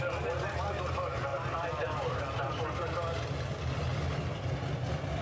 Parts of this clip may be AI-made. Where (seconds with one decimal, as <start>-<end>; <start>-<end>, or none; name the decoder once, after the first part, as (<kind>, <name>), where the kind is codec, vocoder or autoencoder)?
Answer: none